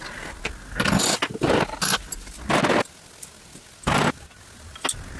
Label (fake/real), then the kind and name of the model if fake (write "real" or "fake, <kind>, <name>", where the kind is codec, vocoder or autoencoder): real